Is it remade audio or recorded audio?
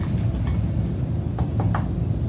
recorded